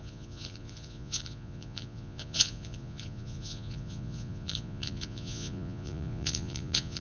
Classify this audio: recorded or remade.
remade